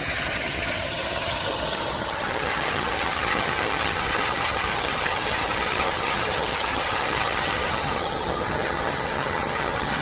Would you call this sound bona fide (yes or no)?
no